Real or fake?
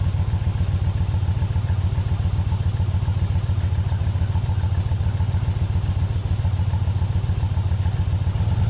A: real